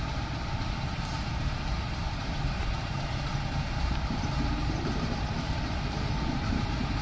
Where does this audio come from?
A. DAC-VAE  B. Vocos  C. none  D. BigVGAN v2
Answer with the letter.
D